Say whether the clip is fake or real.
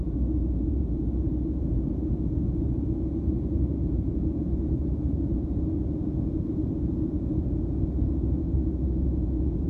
fake